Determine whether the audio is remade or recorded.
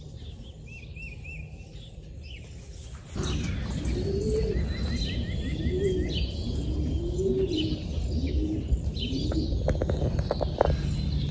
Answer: recorded